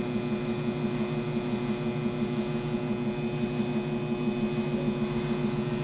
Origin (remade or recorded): recorded